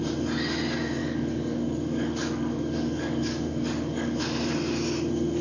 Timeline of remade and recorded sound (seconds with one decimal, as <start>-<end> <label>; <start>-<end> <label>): 0.0-1.0 recorded; 1.0-4.2 remade; 4.2-5.4 recorded